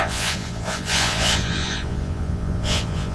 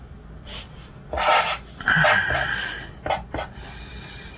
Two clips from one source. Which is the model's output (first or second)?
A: first